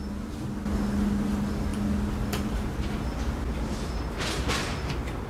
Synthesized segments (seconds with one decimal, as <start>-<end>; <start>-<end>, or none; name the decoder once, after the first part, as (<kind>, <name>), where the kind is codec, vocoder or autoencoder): none